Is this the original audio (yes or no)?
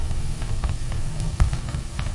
no